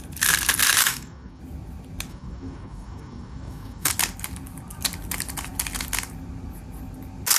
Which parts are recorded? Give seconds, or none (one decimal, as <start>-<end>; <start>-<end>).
0.0-0.8; 1.4-2.1; 3.9-7.4